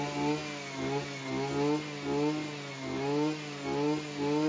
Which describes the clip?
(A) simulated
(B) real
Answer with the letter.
B